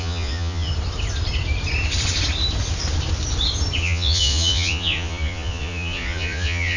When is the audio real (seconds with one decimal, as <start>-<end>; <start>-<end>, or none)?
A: 0.7-3.8